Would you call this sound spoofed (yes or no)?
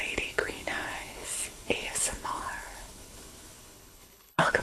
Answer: yes